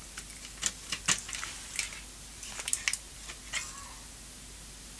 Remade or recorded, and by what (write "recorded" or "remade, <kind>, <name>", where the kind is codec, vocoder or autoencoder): recorded